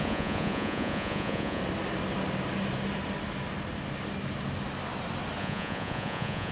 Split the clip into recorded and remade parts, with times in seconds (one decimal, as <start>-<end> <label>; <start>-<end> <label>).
0.0-1.6 remade; 1.6-5.4 recorded; 5.4-6.5 remade